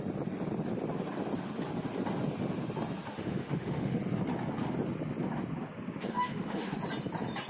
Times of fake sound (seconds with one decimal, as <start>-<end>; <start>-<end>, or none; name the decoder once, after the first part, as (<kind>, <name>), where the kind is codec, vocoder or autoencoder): 3.1-4.0 (autoencoder, DAC-VAE); 6.0-6.8